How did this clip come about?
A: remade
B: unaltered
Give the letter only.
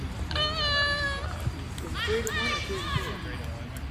B